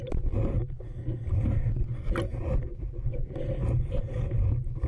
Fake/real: real